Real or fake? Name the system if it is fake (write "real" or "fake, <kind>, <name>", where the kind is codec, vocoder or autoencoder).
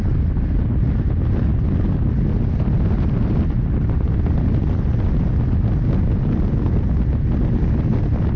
real